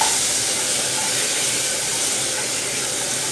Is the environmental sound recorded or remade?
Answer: recorded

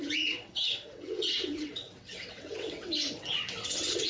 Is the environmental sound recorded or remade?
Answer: remade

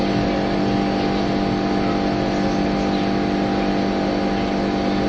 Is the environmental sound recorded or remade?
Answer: recorded